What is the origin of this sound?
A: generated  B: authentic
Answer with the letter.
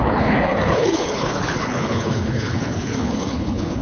A